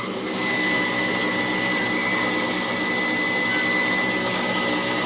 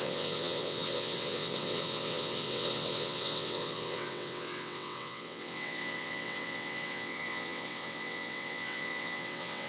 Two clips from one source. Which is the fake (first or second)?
second